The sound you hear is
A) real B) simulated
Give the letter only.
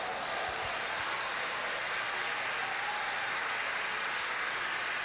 A